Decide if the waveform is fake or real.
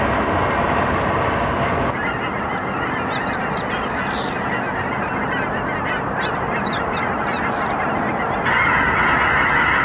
real